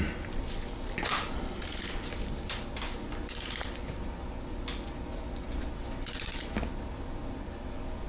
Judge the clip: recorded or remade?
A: recorded